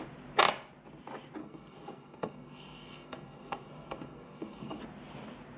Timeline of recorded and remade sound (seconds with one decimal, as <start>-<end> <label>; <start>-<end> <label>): 0.0-1.4 recorded; 1.4-4.8 remade; 4.8-5.6 recorded